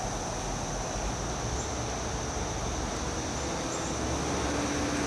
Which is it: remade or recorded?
recorded